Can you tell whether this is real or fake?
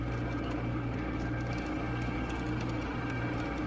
real